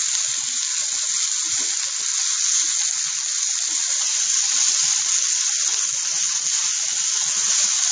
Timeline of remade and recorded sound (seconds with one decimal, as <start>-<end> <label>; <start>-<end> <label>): 0.0-7.9 recorded